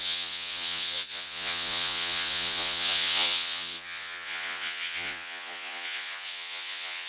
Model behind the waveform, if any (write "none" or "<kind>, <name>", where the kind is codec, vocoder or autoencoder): vocoder, Vocos